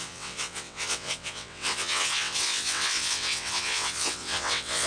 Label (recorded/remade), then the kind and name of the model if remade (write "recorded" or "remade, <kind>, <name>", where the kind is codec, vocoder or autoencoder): remade, vocoder, WaveNeXt